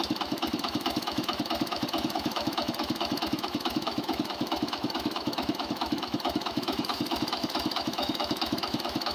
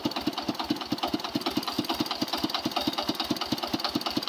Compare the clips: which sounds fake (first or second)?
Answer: first